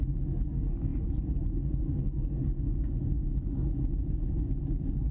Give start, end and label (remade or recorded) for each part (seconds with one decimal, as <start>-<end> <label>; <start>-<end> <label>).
0.0-5.1 recorded